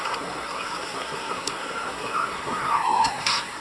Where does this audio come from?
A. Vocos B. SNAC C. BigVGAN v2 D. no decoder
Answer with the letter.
B